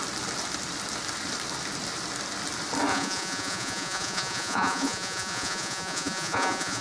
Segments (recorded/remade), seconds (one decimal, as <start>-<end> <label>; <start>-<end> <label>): 0.0-2.9 recorded; 2.9-6.8 remade